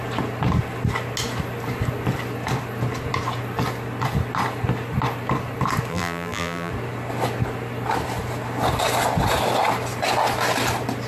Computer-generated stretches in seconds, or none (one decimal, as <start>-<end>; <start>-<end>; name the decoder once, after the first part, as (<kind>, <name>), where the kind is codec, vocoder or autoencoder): 5.9-6.7 (vocoder, BigVGAN v2)